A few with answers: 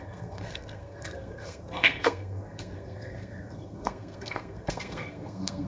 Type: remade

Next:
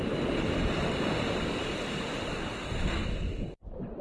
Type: remade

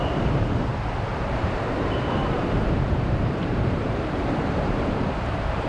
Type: remade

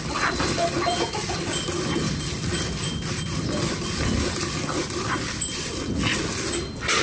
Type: recorded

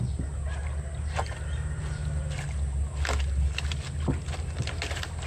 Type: recorded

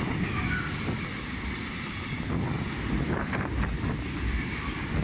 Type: recorded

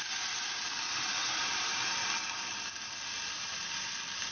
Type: recorded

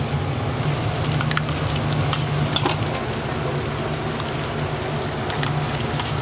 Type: recorded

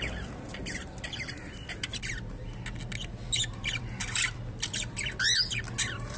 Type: recorded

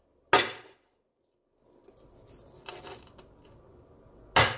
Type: recorded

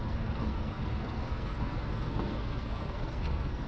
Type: remade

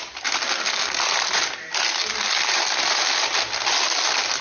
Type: recorded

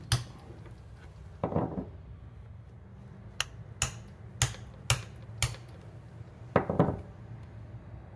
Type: recorded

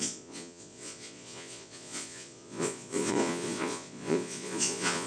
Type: remade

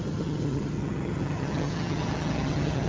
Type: remade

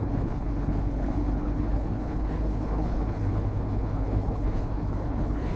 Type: remade